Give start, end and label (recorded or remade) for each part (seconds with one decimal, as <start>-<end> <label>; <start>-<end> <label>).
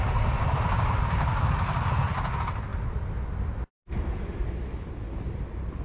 0.0-5.8 recorded